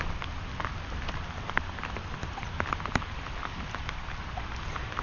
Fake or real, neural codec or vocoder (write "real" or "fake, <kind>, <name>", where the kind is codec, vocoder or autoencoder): real